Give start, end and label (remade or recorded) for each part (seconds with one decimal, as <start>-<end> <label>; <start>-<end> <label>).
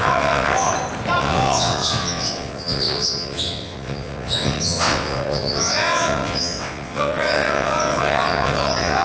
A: 0.0-0.7 remade; 0.7-1.2 recorded; 1.2-9.0 remade